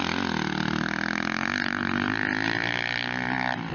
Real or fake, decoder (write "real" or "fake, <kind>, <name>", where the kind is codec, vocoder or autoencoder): real